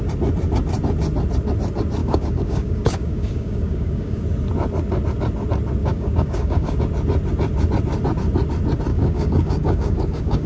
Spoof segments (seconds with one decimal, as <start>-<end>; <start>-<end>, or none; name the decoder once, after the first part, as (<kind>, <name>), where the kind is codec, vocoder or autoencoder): 2.0-4.2 (codec, DAC); 5.8-6.8; 8.9-10.5